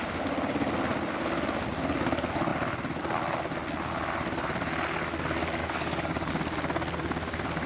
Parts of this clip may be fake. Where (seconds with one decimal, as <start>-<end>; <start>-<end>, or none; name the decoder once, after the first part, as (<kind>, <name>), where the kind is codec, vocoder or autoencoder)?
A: 5.6-6.3 (codec, DAC)

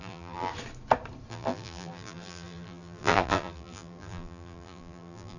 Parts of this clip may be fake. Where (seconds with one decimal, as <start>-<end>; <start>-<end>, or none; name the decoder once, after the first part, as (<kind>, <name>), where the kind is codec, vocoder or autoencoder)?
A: 0.0-0.5 (vocoder, BigVGAN v2); 1.3-5.4

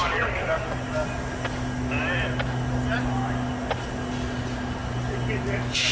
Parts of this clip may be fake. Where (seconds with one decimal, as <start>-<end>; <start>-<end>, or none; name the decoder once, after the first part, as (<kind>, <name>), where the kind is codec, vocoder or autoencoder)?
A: none

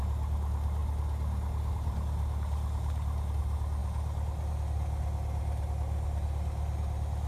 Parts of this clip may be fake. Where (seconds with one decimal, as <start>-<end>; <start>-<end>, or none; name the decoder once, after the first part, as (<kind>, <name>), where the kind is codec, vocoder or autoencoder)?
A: none

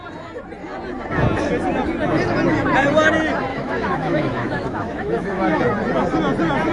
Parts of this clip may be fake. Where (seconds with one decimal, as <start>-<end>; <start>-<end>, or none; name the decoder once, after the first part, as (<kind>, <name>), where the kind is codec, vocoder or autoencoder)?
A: 3.5-5.6 (autoencoder, DAC-VAE)

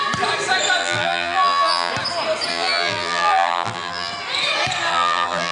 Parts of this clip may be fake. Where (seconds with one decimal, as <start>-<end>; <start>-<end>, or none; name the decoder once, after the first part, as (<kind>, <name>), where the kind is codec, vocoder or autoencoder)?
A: 0.8-1.9 (vocoder, BigVGAN v2); 2.5-4.1; 4.9-5.5

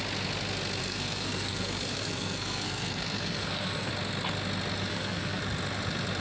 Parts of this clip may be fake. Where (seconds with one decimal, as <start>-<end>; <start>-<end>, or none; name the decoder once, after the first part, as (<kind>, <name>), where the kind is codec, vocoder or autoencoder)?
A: 0.8-3.9 (codec, SNAC); 4.9-5.4